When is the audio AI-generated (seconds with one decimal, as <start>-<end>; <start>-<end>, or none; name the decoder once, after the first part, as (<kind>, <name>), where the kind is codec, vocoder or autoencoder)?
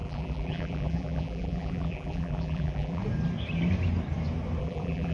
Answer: 0.0-3.0 (vocoder, BigVGAN v2); 4.6-5.1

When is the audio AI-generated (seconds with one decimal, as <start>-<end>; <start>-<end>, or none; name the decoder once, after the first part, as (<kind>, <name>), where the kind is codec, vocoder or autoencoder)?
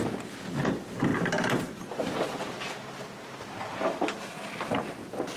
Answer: none